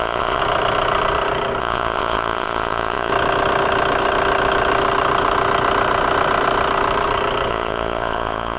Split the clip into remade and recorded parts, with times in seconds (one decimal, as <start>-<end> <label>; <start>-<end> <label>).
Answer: 0.0-0.4 remade; 0.4-1.6 recorded; 1.6-3.1 remade; 3.1-7.5 recorded; 7.5-8.6 remade